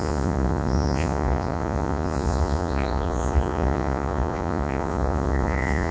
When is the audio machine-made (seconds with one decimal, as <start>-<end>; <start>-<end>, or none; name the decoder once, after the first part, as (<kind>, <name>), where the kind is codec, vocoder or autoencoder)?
0.0-5.9 (vocoder, Vocos)

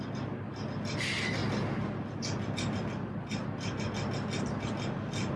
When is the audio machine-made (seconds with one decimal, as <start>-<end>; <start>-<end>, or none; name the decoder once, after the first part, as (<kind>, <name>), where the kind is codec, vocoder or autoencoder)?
none